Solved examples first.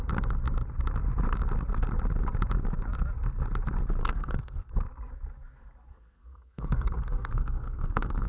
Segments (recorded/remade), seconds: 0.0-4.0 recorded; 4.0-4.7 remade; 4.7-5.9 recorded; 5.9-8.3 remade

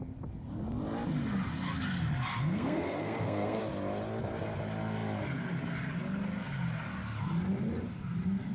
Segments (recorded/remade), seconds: 0.0-2.3 recorded; 2.3-3.6 remade; 3.6-8.5 recorded

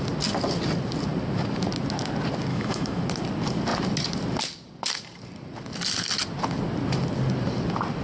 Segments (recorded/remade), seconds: 0.0-2.5 recorded; 2.5-3.0 remade; 3.0-8.0 recorded

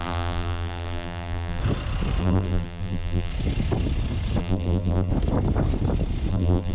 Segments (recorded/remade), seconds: 0.0-1.6 remade; 1.6-2.2 recorded; 2.2-3.3 remade; 3.3-4.4 recorded; 4.4-5.1 remade; 5.1-6.3 recorded; 6.3-6.7 remade

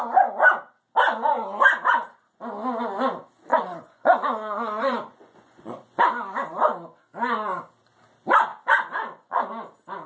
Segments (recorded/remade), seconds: 0.0-3.5 recorded; 3.5-6.0 remade; 6.0-8.5 recorded; 8.5-9.4 remade; 9.4-10.1 recorded